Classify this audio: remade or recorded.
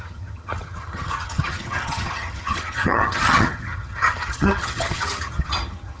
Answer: remade